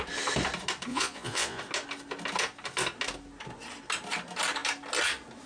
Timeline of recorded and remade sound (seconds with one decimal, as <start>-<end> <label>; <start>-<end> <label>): 0.0-0.9 recorded; 0.9-1.6 remade; 1.6-5.5 recorded